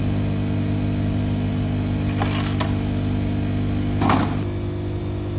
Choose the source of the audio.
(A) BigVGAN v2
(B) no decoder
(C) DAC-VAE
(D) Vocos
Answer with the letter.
B